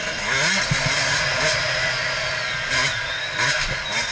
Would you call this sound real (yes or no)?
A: yes